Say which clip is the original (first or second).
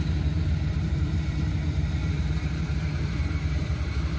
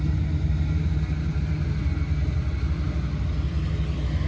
second